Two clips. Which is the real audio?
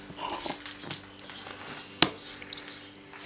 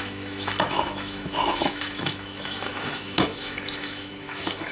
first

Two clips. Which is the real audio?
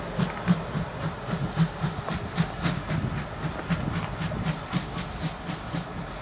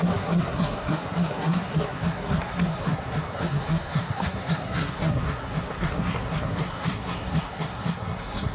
first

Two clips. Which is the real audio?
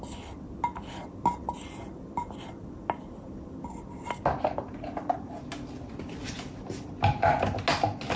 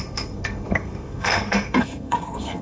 first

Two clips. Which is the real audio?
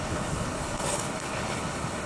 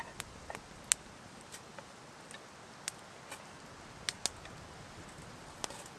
second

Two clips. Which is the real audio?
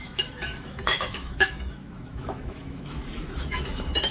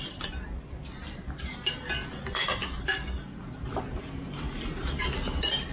second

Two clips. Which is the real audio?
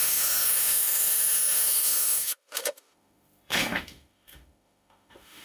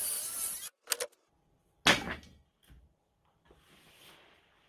second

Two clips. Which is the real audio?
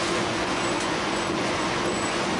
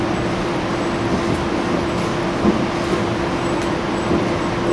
second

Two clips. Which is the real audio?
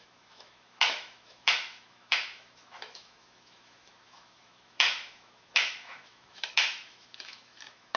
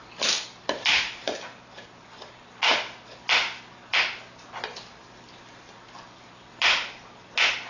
second